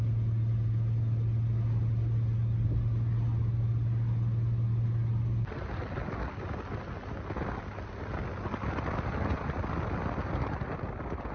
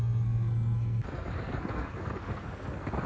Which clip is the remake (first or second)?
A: second